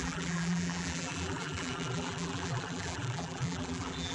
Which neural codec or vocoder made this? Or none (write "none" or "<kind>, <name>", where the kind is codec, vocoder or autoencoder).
vocoder, BigVGAN v2